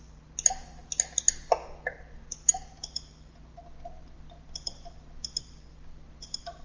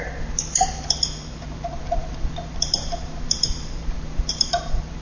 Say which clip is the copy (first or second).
second